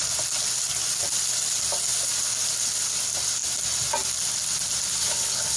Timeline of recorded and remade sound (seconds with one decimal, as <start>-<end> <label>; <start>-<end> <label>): 0.0-5.0 recorded; 5.0-5.6 remade